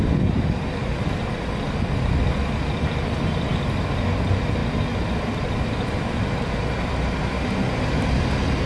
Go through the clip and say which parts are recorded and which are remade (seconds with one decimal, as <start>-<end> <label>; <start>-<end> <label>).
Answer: 0.0-8.7 recorded